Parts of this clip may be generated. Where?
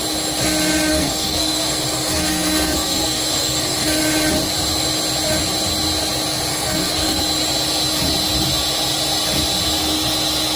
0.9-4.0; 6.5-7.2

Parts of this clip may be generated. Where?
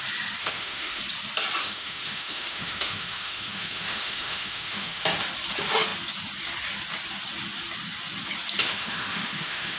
0.4-1.0; 1.6-5.0; 8.6-9.8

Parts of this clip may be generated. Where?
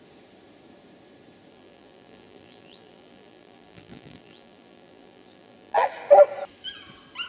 1.5-5.9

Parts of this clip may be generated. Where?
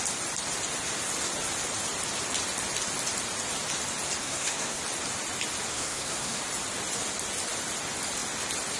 4.2-4.8; 5.7-6.4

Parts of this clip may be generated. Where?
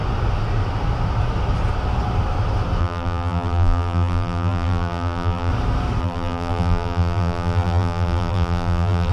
2.8-5.5; 6.0-9.1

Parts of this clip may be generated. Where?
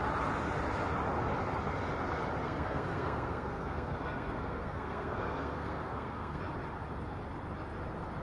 2.4-6.4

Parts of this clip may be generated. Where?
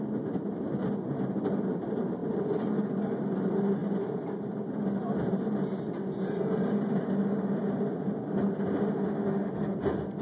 none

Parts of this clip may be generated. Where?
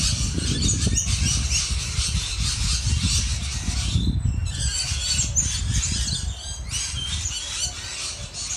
2.3-2.9